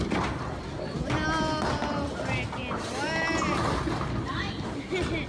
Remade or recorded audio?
recorded